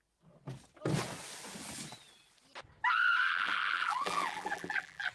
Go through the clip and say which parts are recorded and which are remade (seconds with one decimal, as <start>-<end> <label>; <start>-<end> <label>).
0.0-3.3 recorded; 3.3-5.1 remade